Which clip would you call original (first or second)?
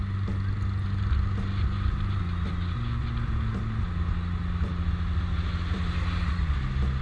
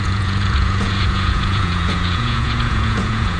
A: first